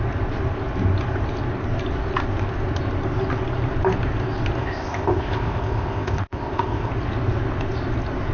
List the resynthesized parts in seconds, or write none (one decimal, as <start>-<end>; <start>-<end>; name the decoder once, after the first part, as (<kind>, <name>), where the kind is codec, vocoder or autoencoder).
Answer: 4.6-6.9 (codec, ZipCodec)